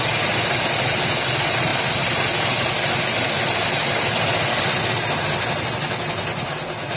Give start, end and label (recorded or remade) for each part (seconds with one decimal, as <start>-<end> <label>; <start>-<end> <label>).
0.0-7.0 recorded